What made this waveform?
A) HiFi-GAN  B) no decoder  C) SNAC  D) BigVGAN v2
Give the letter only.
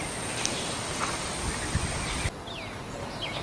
B